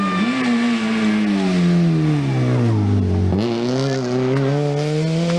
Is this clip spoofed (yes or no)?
no